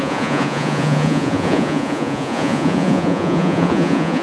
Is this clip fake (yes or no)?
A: yes